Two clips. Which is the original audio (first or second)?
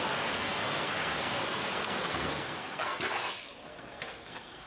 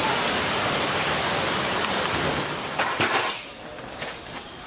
second